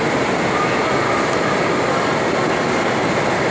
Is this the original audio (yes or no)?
yes